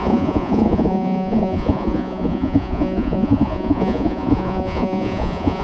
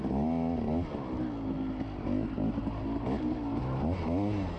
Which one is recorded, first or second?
second